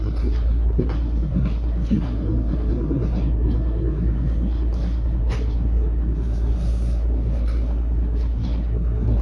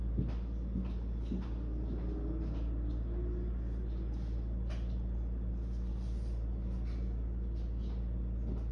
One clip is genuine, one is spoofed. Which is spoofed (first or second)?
first